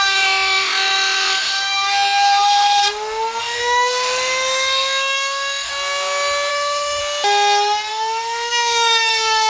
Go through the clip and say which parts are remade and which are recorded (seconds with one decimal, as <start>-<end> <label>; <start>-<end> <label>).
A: 0.0-2.8 remade; 2.8-3.4 recorded; 3.4-5.7 remade; 5.7-6.5 recorded; 6.5-7.0 remade; 7.0-7.9 recorded; 7.9-9.5 remade